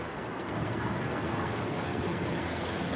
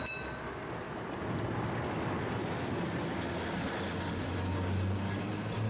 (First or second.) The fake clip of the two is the first